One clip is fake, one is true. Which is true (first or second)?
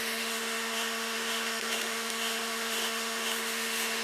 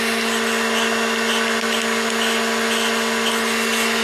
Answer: second